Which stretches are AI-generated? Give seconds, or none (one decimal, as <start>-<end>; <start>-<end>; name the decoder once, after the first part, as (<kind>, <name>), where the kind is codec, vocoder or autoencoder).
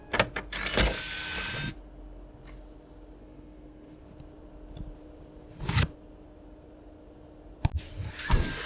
3.2-4.0 (codec, SNAC)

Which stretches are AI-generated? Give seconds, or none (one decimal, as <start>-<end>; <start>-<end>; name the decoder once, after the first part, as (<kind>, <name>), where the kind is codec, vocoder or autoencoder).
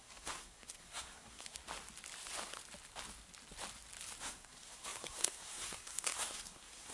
0.0-1.6 (codec, SNAC); 4.2-6.9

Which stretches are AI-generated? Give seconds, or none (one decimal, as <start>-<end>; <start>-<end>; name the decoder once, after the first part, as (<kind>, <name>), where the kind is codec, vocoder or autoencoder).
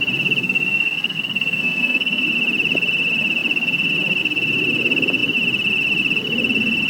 0.4-2.2 (codec, SNAC)